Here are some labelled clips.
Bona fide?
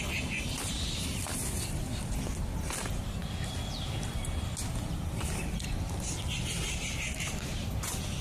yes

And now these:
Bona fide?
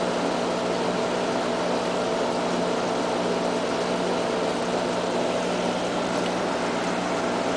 yes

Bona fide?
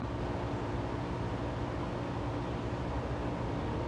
yes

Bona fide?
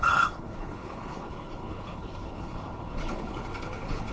no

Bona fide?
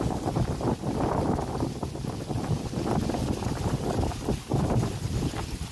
yes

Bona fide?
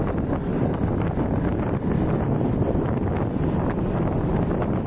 yes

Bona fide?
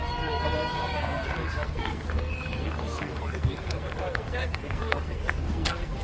no